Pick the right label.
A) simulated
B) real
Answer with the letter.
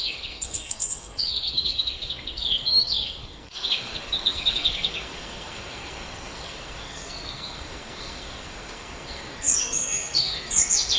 A